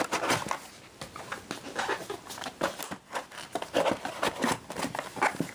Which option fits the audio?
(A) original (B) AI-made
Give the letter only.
A